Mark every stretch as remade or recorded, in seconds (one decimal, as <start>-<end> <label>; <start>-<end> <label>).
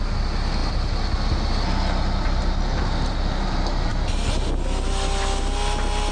0.0-6.1 recorded